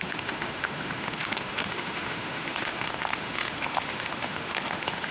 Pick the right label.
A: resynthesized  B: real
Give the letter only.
A